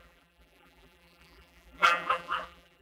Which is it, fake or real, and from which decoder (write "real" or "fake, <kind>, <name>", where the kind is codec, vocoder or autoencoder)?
fake, vocoder, BigVGAN v2